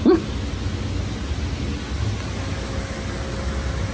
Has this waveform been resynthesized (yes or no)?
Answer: no